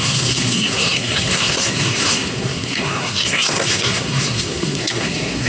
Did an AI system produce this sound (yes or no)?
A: yes